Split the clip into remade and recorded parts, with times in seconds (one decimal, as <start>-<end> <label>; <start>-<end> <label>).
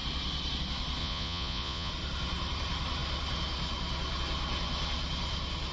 0.0-1.0 recorded; 1.0-1.9 remade; 1.9-5.7 recorded